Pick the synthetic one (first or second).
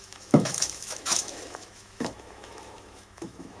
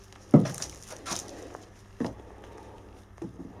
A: first